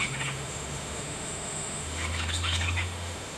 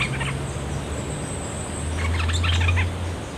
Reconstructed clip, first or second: first